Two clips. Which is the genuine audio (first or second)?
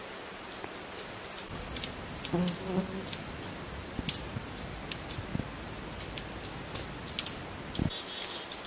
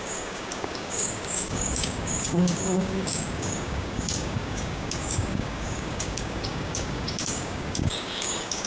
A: first